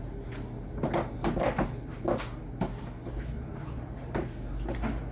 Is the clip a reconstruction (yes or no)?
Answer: no